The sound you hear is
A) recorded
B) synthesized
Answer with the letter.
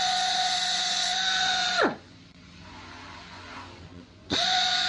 B